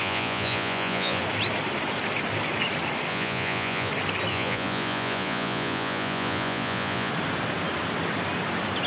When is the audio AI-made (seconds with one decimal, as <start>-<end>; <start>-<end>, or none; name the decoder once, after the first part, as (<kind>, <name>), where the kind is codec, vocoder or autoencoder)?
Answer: 0.0-1.2 (vocoder, Vocos); 3.1-3.9; 4.3-7.1